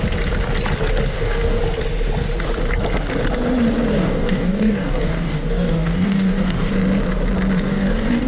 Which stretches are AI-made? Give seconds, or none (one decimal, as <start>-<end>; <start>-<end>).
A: 1.1-1.6; 3.9-6.7; 7.7-8.3